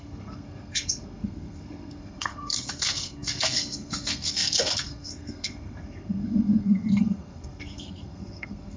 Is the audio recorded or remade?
remade